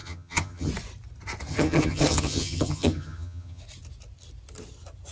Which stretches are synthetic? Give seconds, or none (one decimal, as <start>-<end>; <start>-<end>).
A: 0.0-0.7; 1.5-3.6